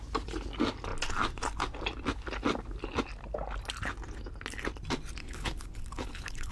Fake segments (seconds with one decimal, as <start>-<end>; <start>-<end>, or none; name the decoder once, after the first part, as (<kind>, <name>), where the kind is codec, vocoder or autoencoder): 5.2-6.5 (codec, HILCodec)